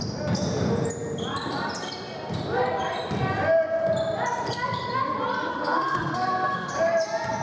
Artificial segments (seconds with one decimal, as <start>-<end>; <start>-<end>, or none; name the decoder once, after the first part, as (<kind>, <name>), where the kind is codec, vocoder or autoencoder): 5.5-6.7 (codec, SNAC)